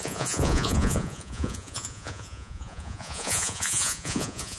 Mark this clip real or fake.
fake